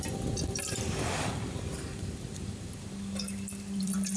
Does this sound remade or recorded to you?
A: remade